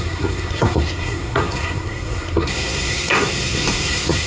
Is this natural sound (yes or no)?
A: no